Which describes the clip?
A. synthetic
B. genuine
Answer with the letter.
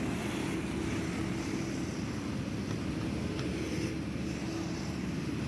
B